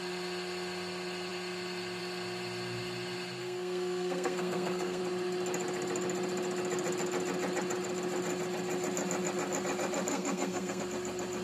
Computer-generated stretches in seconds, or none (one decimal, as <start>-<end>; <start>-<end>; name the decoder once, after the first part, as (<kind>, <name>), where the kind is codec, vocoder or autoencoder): 3.4-5.0 (codec, SNAC); 10.1-10.8